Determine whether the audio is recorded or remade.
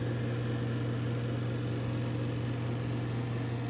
recorded